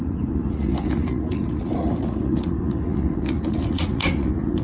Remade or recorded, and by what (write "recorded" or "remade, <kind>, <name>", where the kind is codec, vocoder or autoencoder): remade, vocoder, Vocos